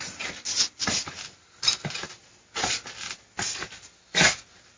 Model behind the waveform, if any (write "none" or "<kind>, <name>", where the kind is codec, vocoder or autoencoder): none